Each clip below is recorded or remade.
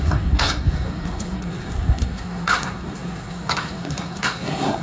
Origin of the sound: remade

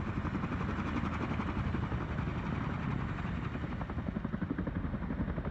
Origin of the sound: recorded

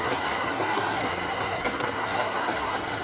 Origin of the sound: remade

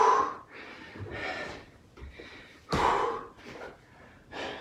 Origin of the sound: recorded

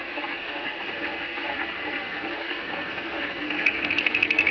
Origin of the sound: remade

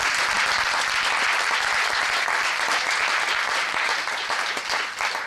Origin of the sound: recorded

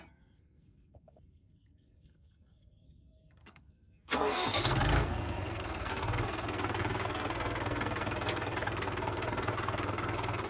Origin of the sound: remade